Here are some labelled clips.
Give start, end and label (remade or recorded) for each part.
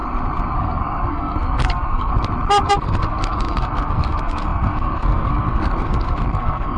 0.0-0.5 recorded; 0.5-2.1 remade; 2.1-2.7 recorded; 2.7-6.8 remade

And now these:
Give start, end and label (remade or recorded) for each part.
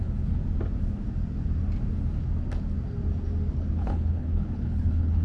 0.0-0.4 remade; 0.4-3.5 recorded; 3.5-5.2 remade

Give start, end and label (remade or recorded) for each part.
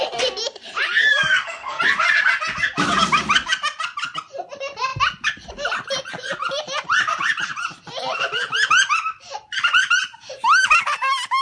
0.0-1.3 recorded; 1.3-1.8 remade; 1.8-11.4 recorded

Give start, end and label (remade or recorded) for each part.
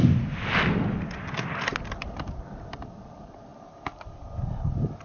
0.0-5.0 recorded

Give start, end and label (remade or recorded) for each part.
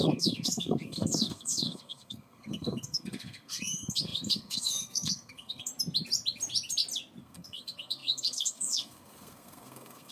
0.0-5.7 remade; 5.7-7.2 recorded; 7.2-10.1 remade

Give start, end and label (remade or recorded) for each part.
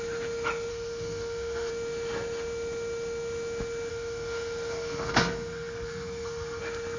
0.0-0.7 recorded; 0.7-1.7 remade; 1.7-3.9 recorded; 3.9-6.6 remade; 6.6-7.0 recorded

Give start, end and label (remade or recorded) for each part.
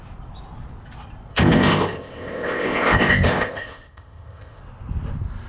0.0-1.3 recorded; 1.3-4.6 remade; 4.6-5.5 recorded